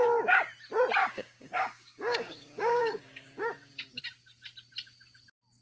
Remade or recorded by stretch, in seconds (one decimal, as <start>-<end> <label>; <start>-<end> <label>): 0.0-1.0 recorded; 1.0-4.0 remade; 4.0-5.6 recorded

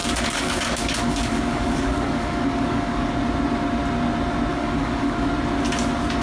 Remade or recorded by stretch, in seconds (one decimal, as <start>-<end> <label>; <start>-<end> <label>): 0.0-3.1 remade; 3.1-4.5 recorded; 4.5-5.3 remade; 5.3-6.2 recorded

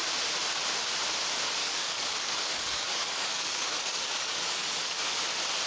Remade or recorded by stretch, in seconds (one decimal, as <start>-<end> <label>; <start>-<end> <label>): 0.0-1.6 recorded; 1.6-5.0 remade; 5.0-5.7 recorded

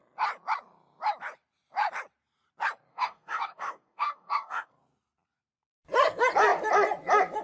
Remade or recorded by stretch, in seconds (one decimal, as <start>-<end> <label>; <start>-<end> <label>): 0.0-2.9 recorded; 2.9-4.7 remade; 4.7-7.4 recorded

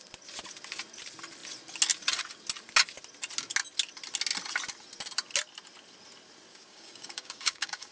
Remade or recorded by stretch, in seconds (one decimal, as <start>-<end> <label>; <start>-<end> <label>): 0.0-6.5 recorded; 6.5-7.9 remade